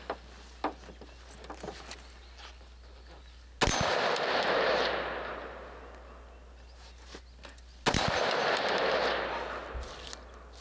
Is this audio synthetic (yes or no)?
no